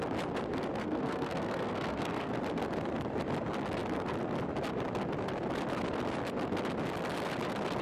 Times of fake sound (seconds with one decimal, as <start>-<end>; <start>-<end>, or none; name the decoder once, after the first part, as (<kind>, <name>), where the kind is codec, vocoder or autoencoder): 0.8-2.3 (codec, SNAC)